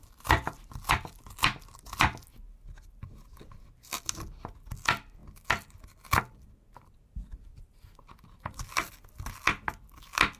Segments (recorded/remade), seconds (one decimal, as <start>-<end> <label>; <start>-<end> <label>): 0.0-10.4 recorded